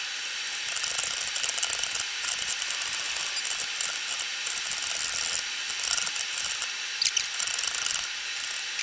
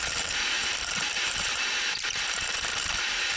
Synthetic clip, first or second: second